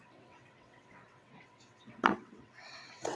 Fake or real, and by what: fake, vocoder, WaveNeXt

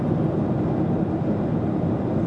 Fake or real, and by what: real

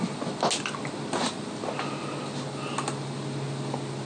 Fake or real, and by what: real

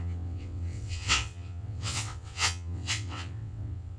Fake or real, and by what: fake, vocoder, WaveNeXt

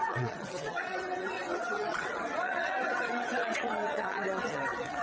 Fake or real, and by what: fake, vocoder, WaveNeXt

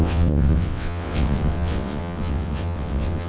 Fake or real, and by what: fake, vocoder, WaveNeXt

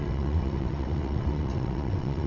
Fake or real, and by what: fake, vocoder, WaveNeXt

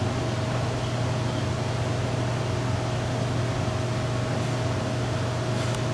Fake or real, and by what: real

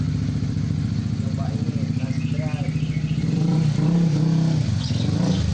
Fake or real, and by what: real